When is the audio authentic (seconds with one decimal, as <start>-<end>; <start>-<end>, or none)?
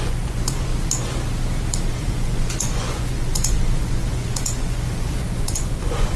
0.7-1.9